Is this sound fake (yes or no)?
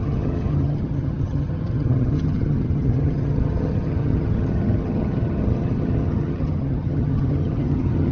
yes